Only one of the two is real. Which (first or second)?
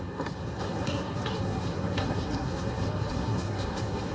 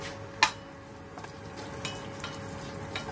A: second